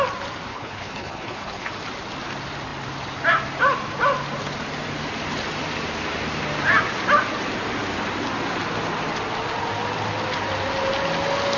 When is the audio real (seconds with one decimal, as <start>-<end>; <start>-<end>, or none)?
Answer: 0.0-0.5; 1.7-11.6